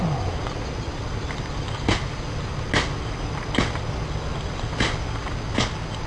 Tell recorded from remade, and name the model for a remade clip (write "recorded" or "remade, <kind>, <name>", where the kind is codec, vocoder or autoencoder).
recorded